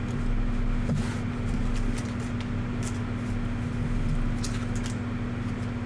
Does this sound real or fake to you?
real